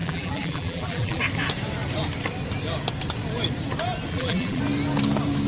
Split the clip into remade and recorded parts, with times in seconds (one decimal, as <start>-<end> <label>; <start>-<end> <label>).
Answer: 0.0-1.2 remade; 1.2-4.1 recorded; 4.1-4.6 remade; 4.6-5.5 recorded